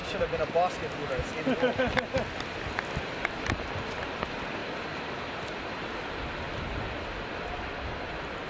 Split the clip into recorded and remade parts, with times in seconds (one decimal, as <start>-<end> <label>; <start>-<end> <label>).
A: 0.0-8.5 recorded